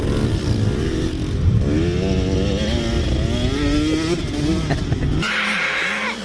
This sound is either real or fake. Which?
real